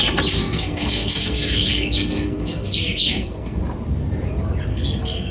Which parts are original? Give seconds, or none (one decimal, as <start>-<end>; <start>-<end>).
0.0-0.4; 3.6-4.7